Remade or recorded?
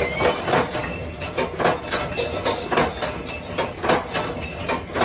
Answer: recorded